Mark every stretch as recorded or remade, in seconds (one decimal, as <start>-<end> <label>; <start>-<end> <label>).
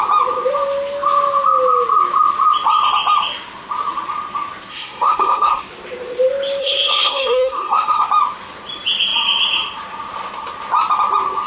0.0-4.7 recorded; 4.7-5.6 remade; 5.6-6.6 recorded; 6.6-8.1 remade; 8.1-11.5 recorded